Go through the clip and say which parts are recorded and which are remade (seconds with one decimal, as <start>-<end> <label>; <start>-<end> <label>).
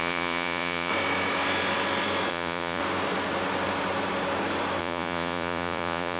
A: 0.0-0.9 remade; 0.9-2.3 recorded; 2.3-2.8 remade; 2.8-4.8 recorded; 4.8-6.2 remade